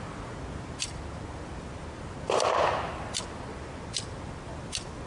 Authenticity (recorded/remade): recorded